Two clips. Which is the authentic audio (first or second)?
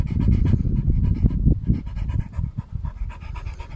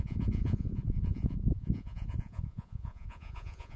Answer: first